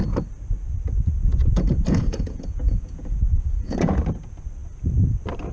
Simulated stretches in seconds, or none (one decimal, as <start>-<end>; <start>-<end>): 1.3-4.0